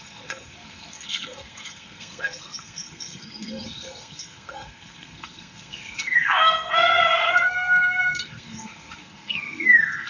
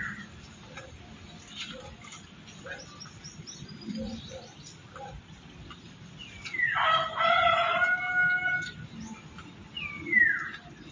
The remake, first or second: first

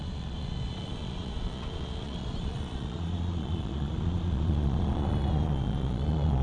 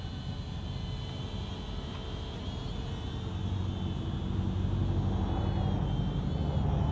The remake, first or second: first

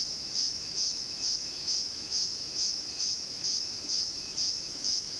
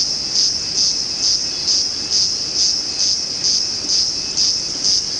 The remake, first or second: first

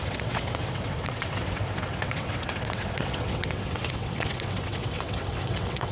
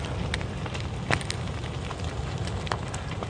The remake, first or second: first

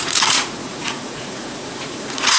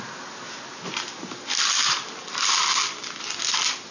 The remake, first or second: first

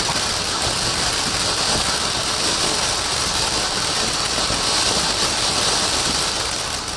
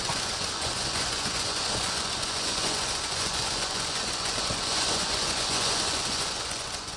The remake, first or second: second